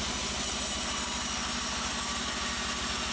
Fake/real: real